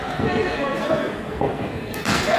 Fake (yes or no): yes